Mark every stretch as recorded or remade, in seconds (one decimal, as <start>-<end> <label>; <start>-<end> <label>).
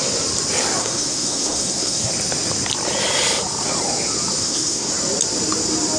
0.0-0.8 recorded; 0.8-2.1 remade; 2.1-4.4 recorded; 4.4-4.9 remade; 4.9-6.0 recorded